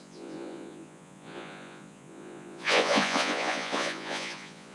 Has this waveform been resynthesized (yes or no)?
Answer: yes